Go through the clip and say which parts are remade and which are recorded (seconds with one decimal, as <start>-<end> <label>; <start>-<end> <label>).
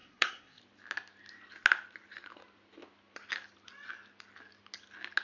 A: 0.0-0.6 remade; 0.6-5.2 recorded